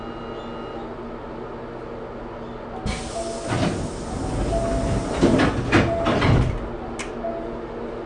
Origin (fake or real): real